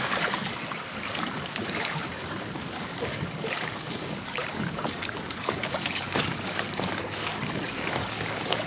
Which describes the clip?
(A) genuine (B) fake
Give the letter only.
B